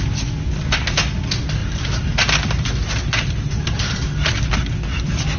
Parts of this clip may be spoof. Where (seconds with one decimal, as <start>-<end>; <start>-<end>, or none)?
none